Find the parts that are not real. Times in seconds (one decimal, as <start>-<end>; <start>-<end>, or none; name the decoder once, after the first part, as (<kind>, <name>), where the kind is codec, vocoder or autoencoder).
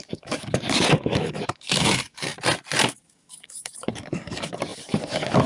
0.0-2.3 (codec, DAC); 2.9-5.5